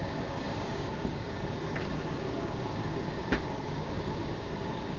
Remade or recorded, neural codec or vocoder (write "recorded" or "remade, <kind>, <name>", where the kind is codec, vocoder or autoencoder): remade, codec, DAC